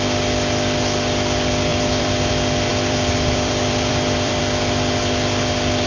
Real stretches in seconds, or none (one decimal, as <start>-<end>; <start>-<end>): 0.0-1.7; 2.3-2.7; 4.4-5.9